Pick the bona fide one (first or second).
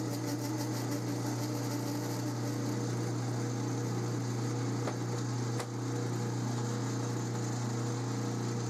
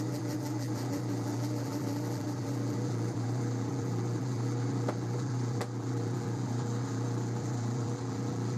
first